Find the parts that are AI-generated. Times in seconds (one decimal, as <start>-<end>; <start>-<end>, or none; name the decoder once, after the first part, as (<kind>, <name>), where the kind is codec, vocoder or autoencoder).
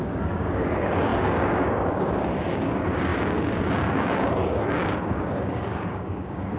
0.0-6.6 (codec, DAC)